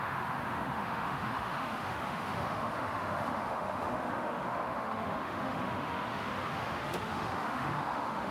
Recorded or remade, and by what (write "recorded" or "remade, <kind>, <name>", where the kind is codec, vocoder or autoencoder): remade, autoencoder, DAC-VAE